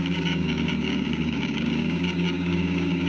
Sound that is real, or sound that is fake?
fake